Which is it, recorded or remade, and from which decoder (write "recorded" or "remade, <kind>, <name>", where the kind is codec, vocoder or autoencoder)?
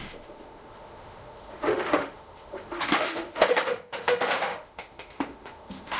remade, autoencoder, DAC-VAE